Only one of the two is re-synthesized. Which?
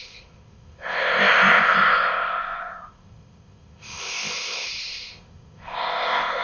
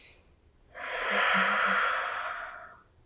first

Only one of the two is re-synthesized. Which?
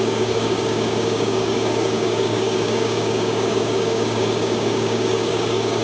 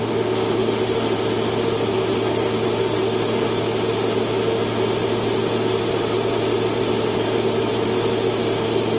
first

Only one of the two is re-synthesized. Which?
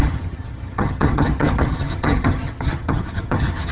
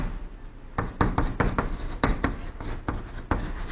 first